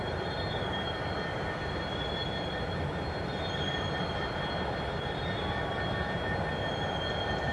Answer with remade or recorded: recorded